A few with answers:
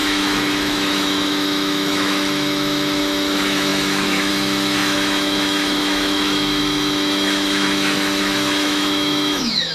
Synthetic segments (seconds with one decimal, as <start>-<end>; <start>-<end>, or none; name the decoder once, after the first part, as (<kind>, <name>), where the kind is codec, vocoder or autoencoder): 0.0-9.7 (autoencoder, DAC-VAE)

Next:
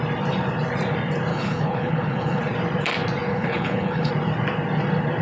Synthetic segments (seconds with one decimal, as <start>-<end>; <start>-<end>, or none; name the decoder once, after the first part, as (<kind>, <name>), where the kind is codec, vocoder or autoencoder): 1.3-2.4 (codec, HILCodec); 3.3-4.1

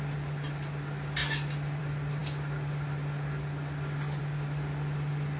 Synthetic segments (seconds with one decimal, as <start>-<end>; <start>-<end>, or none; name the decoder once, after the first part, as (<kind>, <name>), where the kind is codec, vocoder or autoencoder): none

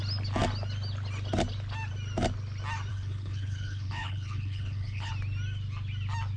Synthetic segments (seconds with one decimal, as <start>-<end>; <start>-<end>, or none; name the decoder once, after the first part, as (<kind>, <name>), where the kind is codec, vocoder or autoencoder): 2.9-5.1 (codec, HILCodec)

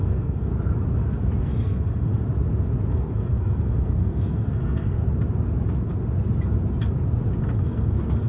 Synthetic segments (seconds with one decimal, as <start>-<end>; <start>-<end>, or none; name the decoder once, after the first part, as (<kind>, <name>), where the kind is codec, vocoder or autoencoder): 0.0-0.5 (codec, SNAC); 1.4-2.1; 2.9-5.0; 7.4-8.3

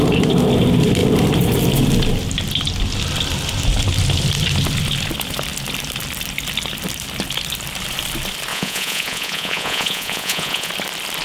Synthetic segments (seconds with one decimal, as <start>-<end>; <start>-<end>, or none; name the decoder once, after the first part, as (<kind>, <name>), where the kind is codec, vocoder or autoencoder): 8.5-10.7 (vocoder, Vocos)